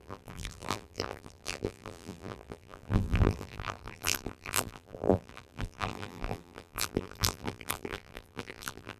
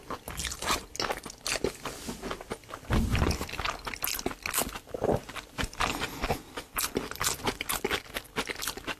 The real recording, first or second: second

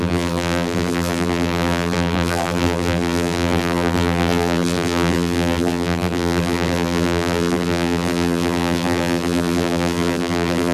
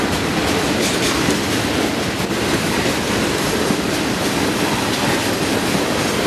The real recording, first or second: second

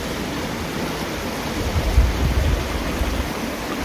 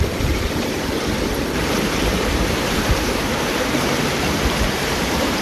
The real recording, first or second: first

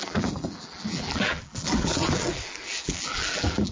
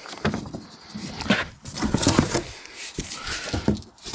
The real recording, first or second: second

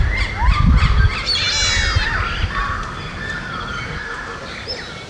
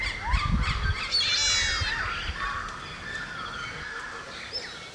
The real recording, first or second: second